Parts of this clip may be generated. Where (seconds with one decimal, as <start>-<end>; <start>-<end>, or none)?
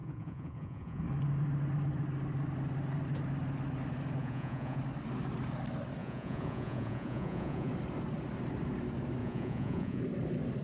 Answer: 0.0-1.0; 4.2-4.8; 6.0-7.7; 9.2-10.0